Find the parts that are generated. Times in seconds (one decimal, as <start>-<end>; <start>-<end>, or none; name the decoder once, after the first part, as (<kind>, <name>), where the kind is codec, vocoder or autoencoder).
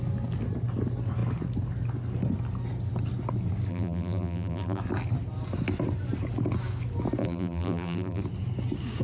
3.7-4.8 (vocoder, BigVGAN v2); 7.2-8.2